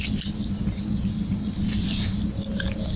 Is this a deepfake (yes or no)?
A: no